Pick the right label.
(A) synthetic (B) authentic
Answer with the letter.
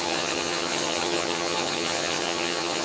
A